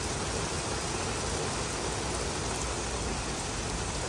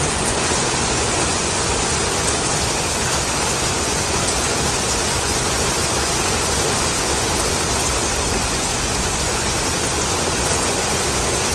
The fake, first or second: second